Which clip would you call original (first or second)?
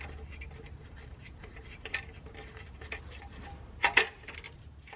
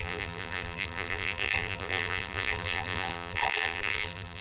first